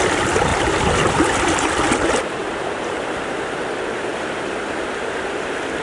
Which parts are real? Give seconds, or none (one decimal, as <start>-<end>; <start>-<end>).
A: 0.5-1.1; 2.4-3.0